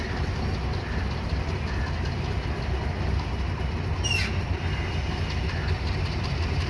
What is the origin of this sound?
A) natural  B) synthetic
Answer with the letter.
A